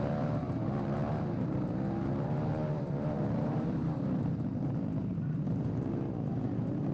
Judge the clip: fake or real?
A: fake